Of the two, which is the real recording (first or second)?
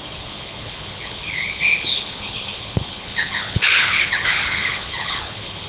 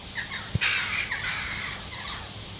second